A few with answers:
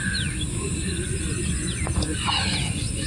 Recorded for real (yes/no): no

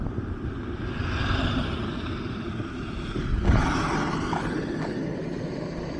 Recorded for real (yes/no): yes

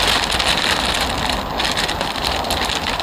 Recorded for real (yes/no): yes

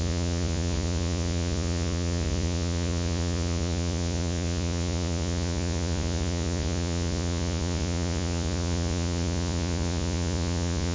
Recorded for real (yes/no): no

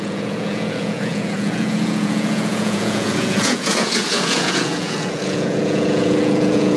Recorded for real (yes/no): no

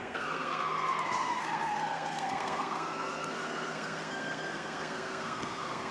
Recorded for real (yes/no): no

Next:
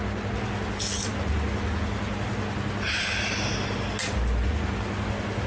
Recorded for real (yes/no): yes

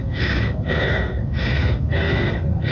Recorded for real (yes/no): no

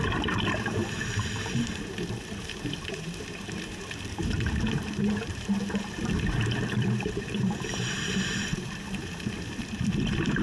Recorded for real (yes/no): no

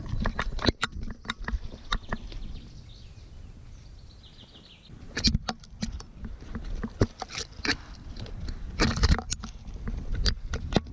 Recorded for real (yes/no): yes